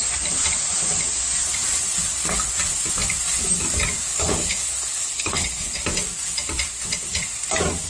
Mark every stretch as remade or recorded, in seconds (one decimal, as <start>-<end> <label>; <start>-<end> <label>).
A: 0.0-4.1 recorded; 4.1-5.8 remade; 5.8-7.9 recorded